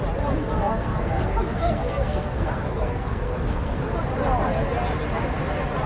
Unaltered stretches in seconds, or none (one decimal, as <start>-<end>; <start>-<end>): 0.0-0.4; 3.9-5.9